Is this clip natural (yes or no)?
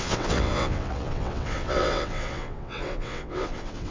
no